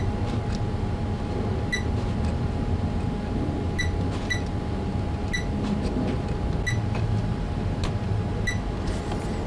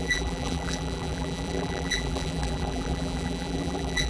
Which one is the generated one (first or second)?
second